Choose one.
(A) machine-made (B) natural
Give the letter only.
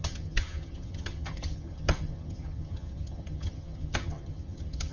A